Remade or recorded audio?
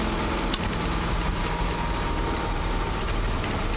remade